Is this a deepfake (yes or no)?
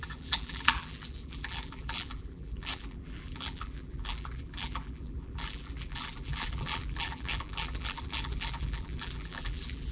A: yes